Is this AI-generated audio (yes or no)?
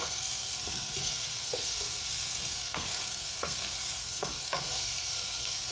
yes